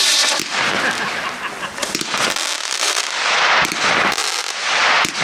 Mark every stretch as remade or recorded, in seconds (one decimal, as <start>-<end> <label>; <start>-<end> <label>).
0.0-2.6 recorded; 2.6-3.2 remade; 3.2-5.2 recorded

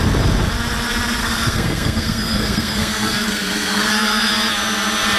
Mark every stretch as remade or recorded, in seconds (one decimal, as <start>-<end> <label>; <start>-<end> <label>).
0.0-1.2 recorded; 1.2-4.3 remade; 4.3-5.2 recorded

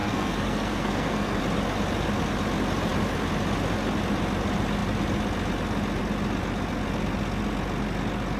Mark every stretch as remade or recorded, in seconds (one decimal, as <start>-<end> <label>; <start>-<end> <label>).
0.0-1.4 remade; 1.4-8.4 recorded

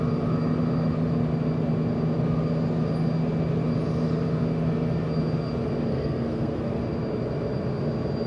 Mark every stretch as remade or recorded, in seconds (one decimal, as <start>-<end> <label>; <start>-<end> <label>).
0.0-5.9 recorded; 5.9-6.8 remade; 6.8-8.3 recorded

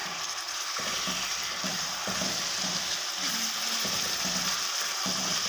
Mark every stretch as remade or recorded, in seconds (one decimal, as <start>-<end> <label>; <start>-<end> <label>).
0.0-5.5 recorded

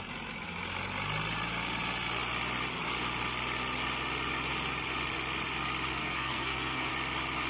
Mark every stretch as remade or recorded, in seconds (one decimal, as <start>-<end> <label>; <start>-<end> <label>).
0.0-6.0 recorded; 6.0-6.9 remade; 6.9-7.5 recorded

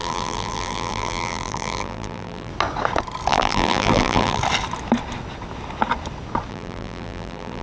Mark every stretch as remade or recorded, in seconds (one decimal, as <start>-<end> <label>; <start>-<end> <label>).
0.0-2.5 remade; 2.5-3.3 recorded; 3.3-4.4 remade; 4.4-6.5 recorded; 6.5-7.6 remade